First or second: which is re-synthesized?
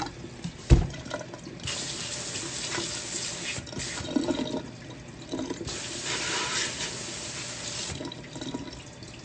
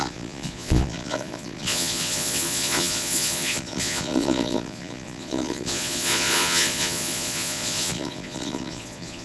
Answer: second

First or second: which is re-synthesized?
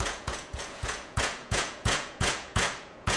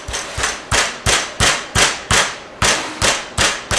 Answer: first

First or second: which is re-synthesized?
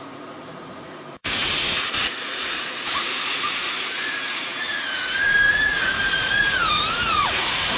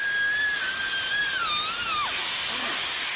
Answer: first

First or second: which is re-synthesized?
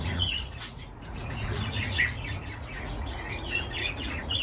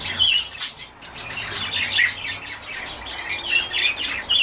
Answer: first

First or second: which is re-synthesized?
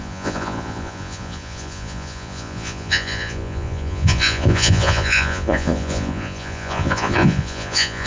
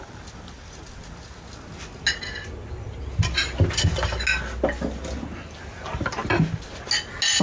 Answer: first